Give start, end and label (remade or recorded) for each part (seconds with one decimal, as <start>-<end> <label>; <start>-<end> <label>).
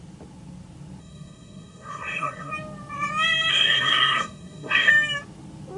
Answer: 0.0-1.0 recorded; 1.0-2.5 remade; 2.5-3.5 recorded; 3.5-4.9 remade; 4.9-5.8 recorded